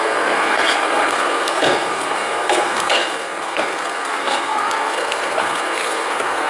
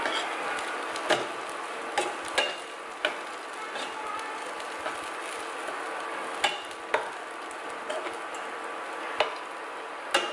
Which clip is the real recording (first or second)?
second